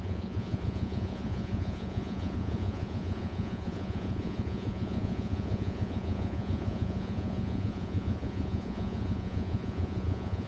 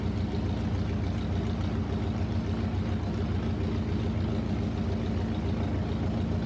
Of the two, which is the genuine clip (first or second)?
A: second